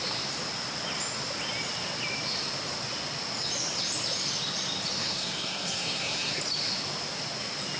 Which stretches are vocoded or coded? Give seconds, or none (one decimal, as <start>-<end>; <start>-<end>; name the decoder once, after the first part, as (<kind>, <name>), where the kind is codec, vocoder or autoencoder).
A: 5.0-6.4 (codec, SNAC)